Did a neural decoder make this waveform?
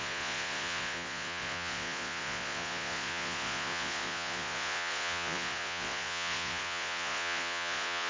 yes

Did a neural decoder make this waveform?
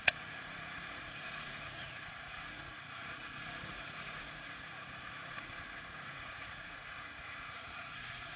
yes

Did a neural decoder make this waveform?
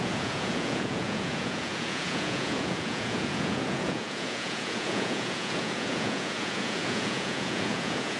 yes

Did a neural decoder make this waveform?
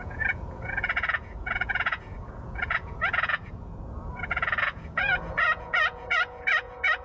yes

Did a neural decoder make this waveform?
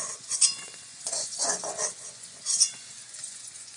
yes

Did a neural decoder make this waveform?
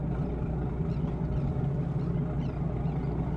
no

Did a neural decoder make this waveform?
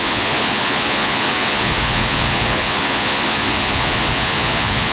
yes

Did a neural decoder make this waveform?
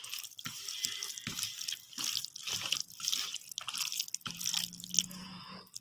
no